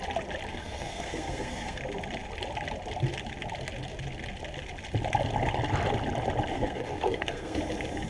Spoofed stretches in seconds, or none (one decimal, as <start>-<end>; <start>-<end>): 0.5-1.8; 6.5-7.6